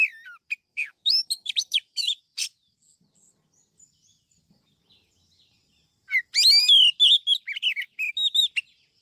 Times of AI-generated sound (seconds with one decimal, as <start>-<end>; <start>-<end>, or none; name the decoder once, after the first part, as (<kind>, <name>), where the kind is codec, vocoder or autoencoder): 0.7-2.2 (autoencoder, DAC-VAE); 7.7-8.4